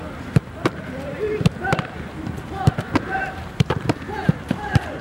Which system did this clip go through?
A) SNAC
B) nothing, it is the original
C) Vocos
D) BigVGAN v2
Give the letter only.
D